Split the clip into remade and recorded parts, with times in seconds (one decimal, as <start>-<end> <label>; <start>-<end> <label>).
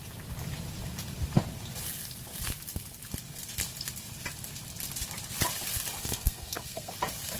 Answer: 0.0-6.0 recorded; 6.0-6.9 remade; 6.9-7.4 recorded